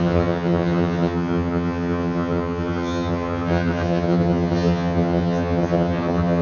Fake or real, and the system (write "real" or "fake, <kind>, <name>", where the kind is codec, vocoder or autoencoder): fake, vocoder, HiFi-GAN